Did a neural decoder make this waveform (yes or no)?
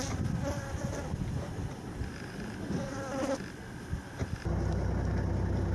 no